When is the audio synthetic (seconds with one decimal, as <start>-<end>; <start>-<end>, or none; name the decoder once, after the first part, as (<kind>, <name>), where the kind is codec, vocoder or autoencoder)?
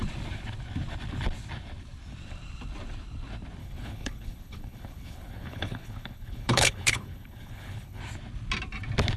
3.6-8.0 (codec, HILCodec)